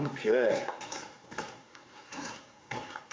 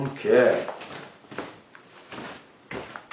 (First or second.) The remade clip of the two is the first